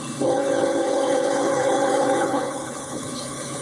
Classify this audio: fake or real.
fake